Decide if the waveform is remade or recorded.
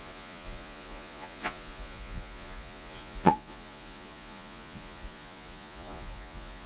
remade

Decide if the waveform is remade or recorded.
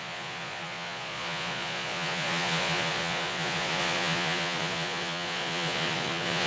remade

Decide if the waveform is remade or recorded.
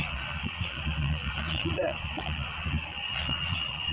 remade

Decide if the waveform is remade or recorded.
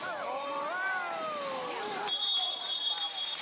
recorded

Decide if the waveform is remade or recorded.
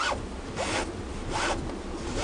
recorded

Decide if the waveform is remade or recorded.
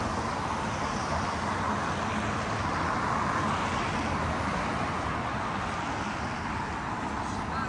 recorded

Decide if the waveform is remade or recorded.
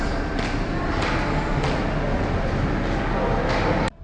recorded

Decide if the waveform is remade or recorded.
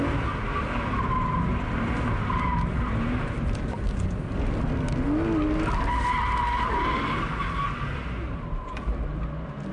recorded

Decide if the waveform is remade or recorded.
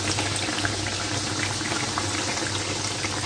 recorded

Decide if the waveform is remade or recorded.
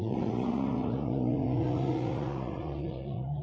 remade